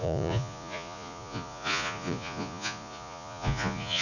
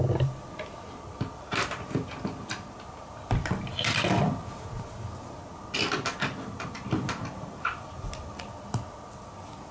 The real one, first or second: second